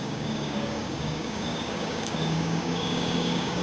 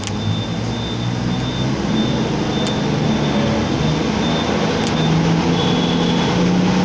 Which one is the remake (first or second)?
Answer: first